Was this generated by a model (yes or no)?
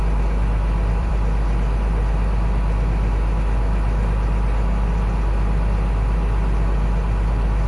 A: yes